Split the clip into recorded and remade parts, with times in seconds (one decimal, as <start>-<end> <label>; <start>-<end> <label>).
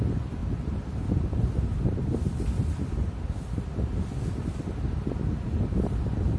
0.0-6.4 recorded